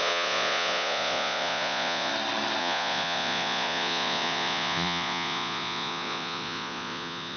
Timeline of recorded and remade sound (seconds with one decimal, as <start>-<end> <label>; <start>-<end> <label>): 0.0-2.1 remade; 2.1-2.6 recorded; 2.6-7.4 remade